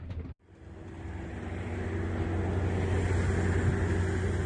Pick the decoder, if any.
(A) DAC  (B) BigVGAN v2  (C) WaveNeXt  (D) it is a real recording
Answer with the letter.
D